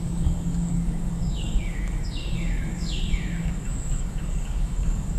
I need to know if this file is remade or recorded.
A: remade